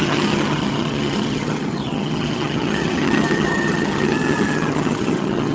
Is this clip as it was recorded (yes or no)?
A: no